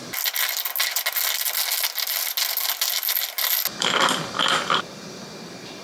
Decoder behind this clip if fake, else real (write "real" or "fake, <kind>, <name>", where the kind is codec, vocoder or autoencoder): real